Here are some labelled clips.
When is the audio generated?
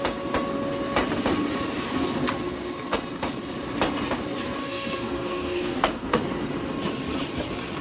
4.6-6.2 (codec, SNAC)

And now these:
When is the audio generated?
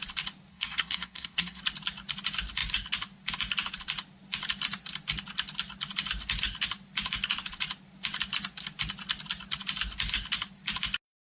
0.5-1.6 (codec, SNAC)